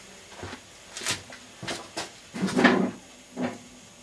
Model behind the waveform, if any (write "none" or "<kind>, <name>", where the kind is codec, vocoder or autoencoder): none